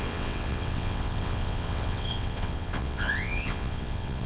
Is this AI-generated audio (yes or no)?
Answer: yes